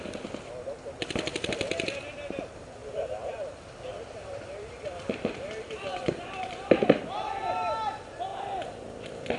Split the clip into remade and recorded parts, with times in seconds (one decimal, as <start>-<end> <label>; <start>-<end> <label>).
0.0-8.3 remade; 8.3-9.4 recorded